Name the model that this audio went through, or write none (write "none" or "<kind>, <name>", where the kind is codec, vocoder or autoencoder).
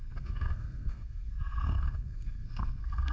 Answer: codec, SNAC